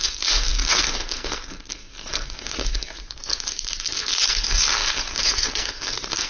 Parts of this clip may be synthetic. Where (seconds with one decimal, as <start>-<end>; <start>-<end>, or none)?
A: 0.0-6.3